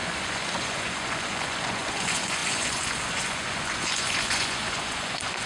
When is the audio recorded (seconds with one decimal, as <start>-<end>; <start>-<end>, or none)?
none